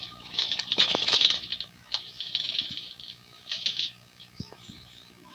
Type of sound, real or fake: fake